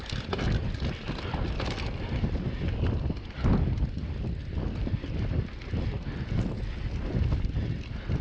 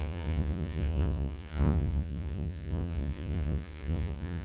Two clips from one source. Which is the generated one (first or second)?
second